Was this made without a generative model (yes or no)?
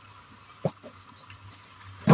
yes